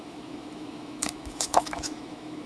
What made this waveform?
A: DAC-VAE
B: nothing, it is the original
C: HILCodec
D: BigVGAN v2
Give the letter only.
A